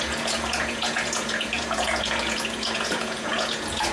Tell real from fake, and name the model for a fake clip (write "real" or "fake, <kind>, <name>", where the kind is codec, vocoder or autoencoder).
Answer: fake, vocoder, Vocos